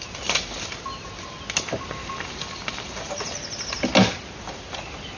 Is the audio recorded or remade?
recorded